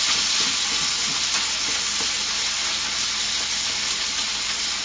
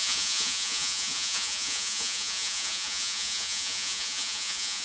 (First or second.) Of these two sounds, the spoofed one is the second